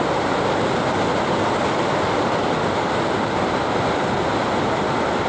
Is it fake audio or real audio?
real